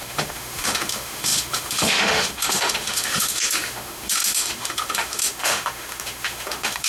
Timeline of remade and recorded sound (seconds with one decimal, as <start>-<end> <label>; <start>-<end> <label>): 0.0-6.9 remade